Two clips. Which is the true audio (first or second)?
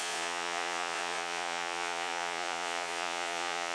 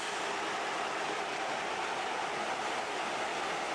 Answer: second